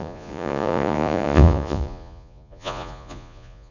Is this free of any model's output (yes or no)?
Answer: no